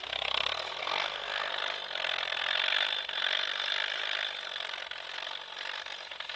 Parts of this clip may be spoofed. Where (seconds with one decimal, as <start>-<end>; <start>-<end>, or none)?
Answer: 0.8-1.5